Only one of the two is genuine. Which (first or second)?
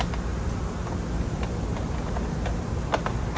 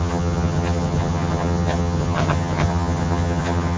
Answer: first